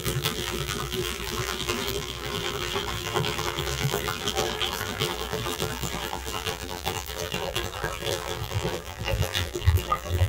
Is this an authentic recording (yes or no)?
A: no